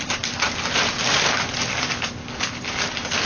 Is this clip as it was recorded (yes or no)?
no